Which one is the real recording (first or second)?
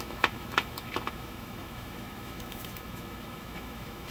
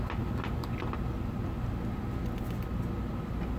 second